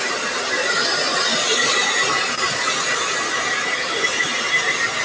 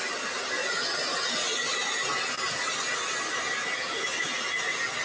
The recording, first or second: second